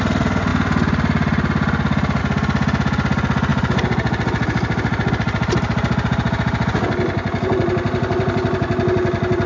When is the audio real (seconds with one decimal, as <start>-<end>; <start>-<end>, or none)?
0.0-9.5